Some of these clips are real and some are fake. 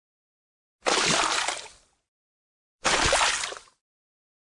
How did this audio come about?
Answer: real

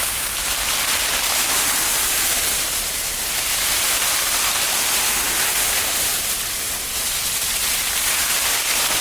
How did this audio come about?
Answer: fake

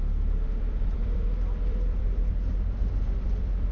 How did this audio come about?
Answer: fake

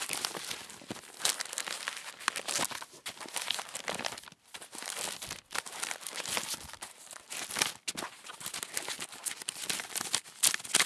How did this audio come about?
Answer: real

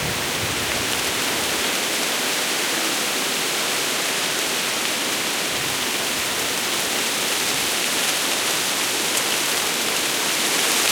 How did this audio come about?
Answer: real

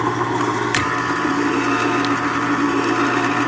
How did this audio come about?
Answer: fake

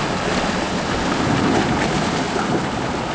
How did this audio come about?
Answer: real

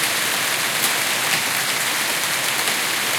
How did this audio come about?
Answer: real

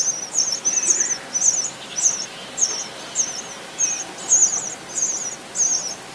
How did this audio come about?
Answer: real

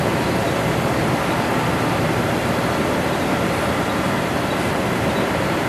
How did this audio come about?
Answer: fake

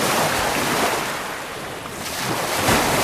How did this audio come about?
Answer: real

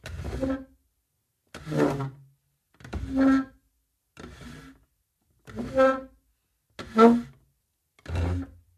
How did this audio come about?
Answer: real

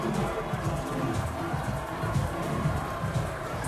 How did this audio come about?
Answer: fake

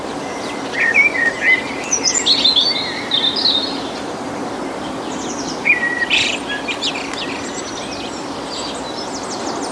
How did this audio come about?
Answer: real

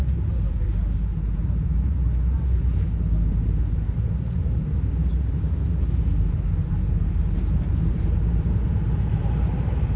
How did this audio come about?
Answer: fake